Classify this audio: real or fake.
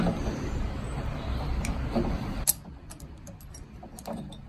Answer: real